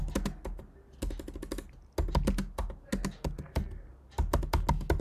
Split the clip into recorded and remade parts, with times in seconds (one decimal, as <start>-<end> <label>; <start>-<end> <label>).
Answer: 0.0-5.0 recorded